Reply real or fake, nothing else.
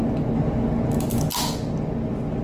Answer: real